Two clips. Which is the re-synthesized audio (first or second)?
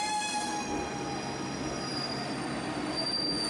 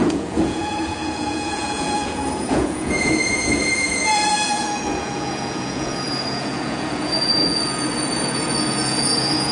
second